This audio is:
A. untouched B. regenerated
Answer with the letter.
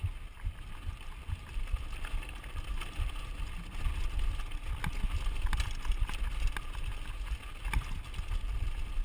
A